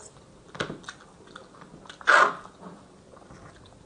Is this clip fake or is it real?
real